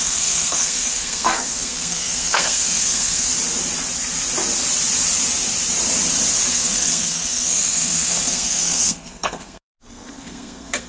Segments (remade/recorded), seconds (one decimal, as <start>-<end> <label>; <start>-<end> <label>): 0.0-3.3 remade; 3.3-6.5 recorded; 6.5-10.9 remade

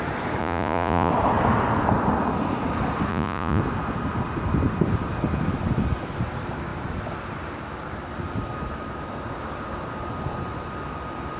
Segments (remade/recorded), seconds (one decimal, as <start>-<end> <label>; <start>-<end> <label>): 0.0-0.4 recorded; 0.4-1.1 remade; 1.1-3.1 recorded; 3.1-3.6 remade; 3.6-11.4 recorded